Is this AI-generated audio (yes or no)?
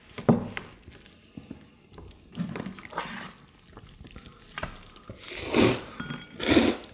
no